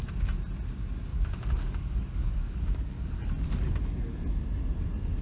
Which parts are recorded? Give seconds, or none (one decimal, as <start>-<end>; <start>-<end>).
0.0-1.1; 3.1-5.2